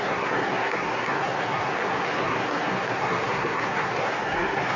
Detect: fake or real fake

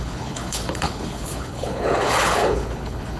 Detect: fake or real fake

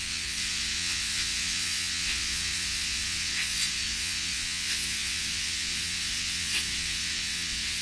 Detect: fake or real fake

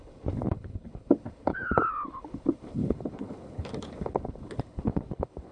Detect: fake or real fake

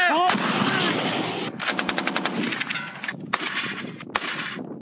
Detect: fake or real real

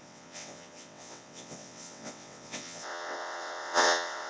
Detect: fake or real fake